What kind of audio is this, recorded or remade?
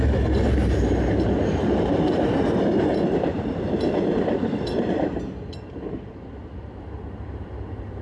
remade